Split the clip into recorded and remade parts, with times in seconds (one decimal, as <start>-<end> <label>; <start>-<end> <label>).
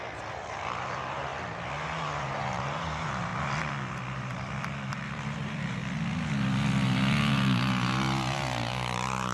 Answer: 0.0-1.3 remade; 1.3-2.2 recorded; 2.2-3.3 remade; 3.3-4.9 recorded; 4.9-5.8 remade; 5.8-7.3 recorded; 7.3-9.3 remade